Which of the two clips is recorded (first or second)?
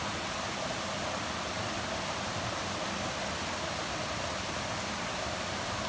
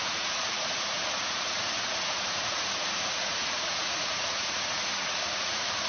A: first